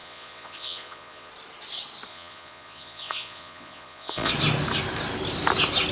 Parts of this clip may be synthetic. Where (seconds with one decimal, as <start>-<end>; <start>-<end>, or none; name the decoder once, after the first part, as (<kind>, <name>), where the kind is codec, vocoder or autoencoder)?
0.0-1.3 (vocoder, Vocos); 2.1-4.3